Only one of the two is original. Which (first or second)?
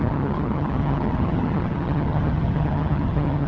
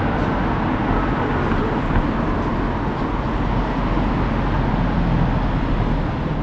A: second